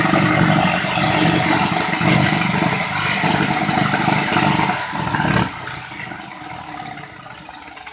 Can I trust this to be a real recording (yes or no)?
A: yes